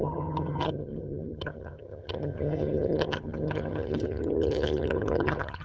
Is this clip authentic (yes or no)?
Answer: no